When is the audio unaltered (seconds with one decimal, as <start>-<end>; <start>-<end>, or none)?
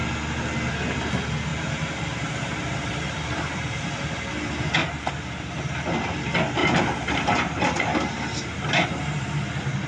0.0-1.5; 4.3-4.8; 5.5-6.6; 7.6-9.9